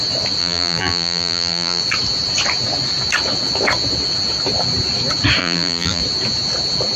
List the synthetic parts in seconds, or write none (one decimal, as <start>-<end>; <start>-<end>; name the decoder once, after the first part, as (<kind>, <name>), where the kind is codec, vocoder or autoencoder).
0.4-1.8 (vocoder, BigVGAN v2); 5.4-6.0